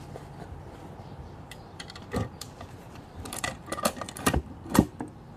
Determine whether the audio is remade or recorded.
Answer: remade